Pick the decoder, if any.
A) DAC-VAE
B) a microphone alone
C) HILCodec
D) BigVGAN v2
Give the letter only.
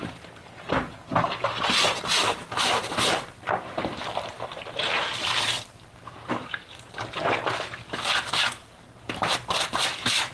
D